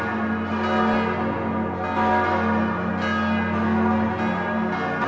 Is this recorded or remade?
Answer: recorded